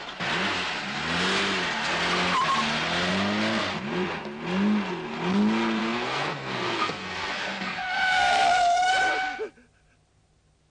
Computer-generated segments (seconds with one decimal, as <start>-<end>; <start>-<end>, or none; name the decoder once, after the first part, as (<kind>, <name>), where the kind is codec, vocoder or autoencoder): 5.8-8.9 (codec, SNAC)